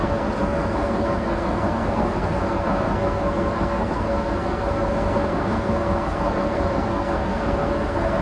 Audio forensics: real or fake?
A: fake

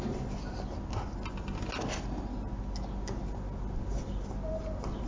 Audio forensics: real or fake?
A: real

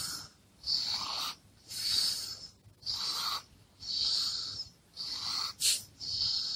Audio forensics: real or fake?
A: real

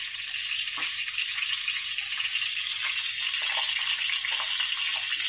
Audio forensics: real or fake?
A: real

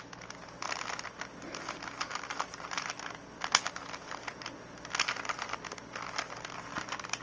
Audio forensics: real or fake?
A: real